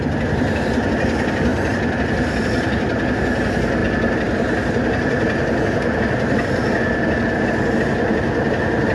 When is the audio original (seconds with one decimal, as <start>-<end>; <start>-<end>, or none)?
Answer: 0.0-8.9